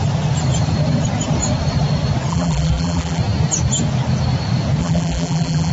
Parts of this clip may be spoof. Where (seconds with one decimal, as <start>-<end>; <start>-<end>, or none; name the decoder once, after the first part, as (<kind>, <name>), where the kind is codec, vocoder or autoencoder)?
2.3-3.2 (vocoder, BigVGAN v2); 4.8-5.7